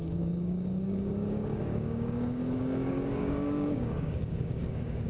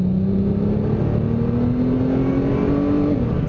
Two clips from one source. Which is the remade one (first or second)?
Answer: first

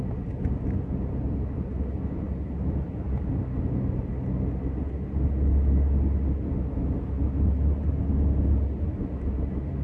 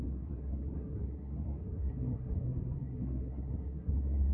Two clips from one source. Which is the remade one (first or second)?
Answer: second